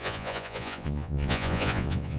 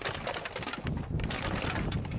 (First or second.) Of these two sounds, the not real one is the first